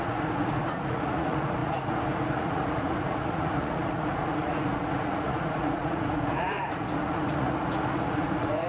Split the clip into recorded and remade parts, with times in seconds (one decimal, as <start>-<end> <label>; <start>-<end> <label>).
0.0-8.7 remade